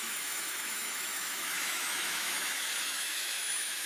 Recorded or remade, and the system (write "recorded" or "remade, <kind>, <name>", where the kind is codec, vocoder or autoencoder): remade, autoencoder, DAC-VAE